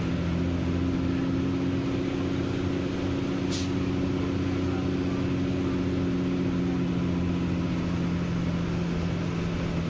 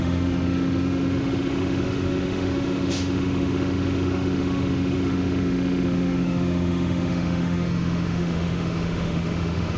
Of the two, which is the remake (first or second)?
second